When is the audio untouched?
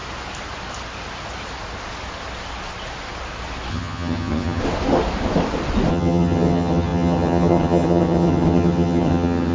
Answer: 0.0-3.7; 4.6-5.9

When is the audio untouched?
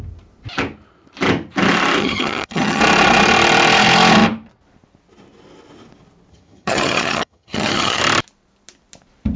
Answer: 0.0-2.0; 2.8-6.3; 8.0-9.4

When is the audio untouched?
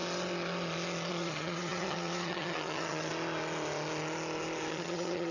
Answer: 0.0-1.1; 3.1-4.7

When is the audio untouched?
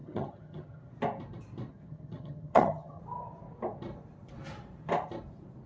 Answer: 0.9-1.7; 3.0-5.7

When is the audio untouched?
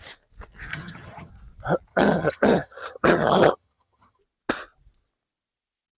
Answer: 0.0-0.7; 1.3-1.9; 4.2-6.0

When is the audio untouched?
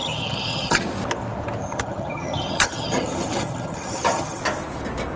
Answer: 0.8-1.6; 4.4-5.2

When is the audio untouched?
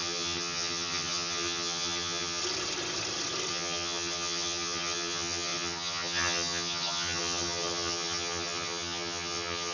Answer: 2.4-3.5